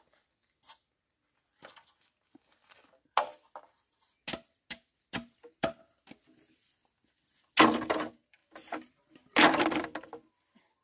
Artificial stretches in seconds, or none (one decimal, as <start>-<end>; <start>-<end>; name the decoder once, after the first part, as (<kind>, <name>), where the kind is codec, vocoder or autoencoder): none